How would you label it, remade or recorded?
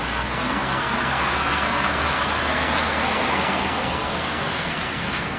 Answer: remade